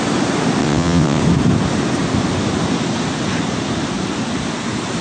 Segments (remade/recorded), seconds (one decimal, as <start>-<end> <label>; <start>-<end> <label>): 0.0-0.6 recorded; 0.6-1.2 remade; 1.2-5.0 recorded